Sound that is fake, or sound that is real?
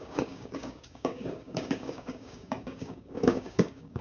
fake